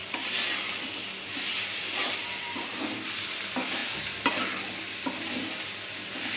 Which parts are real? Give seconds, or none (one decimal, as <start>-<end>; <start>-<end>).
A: 0.0-6.4